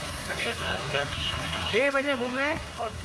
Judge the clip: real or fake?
fake